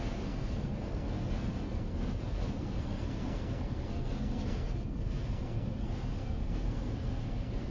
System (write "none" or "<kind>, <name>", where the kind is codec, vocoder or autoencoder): codec, SNAC